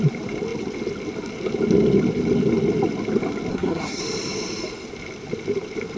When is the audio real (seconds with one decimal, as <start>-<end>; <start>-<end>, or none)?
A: 0.0-3.5; 4.0-6.0